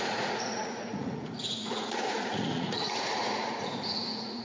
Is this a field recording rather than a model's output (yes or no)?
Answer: no